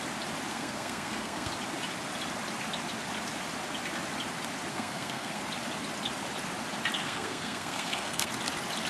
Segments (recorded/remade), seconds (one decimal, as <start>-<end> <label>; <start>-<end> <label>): 0.0-0.5 recorded; 0.5-1.5 remade; 1.5-4.7 recorded; 4.7-5.4 remade; 5.4-7.0 recorded; 7.0-8.3 remade; 8.3-8.9 recorded